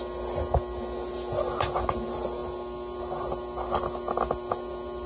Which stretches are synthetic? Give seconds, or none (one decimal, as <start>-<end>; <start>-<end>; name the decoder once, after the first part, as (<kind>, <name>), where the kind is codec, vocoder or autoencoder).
none